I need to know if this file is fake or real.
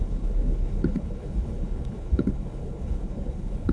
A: fake